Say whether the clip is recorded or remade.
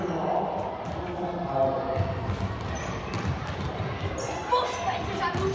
recorded